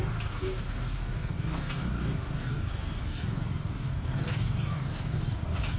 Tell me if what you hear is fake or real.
fake